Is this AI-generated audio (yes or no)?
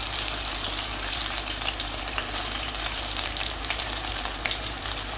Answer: yes